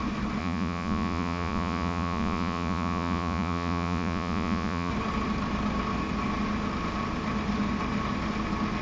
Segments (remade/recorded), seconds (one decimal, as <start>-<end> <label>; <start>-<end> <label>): 0.0-0.4 recorded; 0.4-4.9 remade; 4.9-8.8 recorded